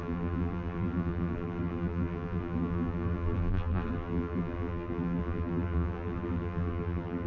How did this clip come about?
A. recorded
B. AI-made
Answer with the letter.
B